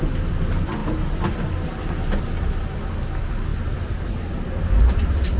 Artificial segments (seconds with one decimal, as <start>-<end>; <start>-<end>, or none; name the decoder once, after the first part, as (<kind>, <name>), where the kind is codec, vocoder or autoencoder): none